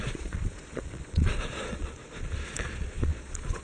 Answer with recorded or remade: remade